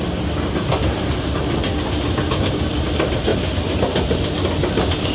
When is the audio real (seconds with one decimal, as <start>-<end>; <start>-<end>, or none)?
0.0-5.1

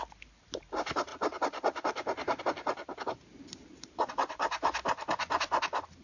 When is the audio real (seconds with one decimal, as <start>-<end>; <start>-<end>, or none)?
0.0-1.1; 2.4-3.2; 5.1-6.0

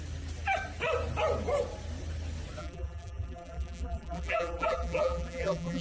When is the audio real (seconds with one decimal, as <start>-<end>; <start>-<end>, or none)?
0.0-2.6

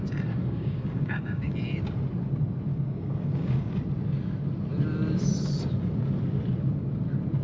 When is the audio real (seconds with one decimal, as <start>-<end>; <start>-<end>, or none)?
0.0-0.4; 1.5-2.7; 3.7-7.4

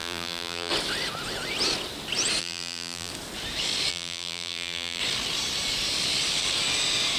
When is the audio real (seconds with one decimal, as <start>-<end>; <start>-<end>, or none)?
0.7-2.4; 3.1-3.9; 5.0-7.2

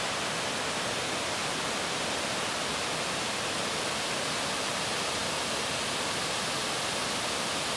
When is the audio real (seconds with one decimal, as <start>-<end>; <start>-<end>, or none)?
0.0-7.8

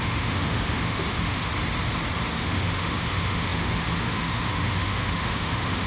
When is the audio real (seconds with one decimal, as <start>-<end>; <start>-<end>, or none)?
1.5-2.4